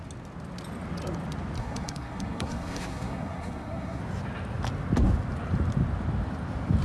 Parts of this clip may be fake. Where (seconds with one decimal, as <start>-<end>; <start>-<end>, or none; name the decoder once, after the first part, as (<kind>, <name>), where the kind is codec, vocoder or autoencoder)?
1.6-4.0 (codec, SNAC)

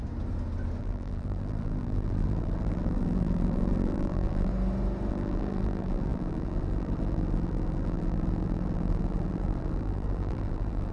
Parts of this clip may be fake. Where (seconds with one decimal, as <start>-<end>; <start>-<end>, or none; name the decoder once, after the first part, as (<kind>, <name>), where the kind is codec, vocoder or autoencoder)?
0.8-4.5 (vocoder, BigVGAN v2); 5.1-10.9

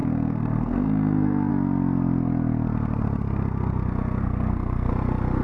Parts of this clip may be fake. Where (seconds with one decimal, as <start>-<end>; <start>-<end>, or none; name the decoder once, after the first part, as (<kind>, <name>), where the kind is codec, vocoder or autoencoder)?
0.0-1.5 (codec, SNAC); 4.2-4.9

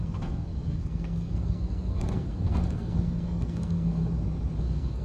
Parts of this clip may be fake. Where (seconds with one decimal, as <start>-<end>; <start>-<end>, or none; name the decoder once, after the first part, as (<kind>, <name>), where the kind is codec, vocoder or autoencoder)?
0.0-4.0 (codec, SNAC); 4.6-5.0